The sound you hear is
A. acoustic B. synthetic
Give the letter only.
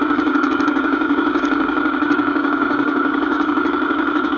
B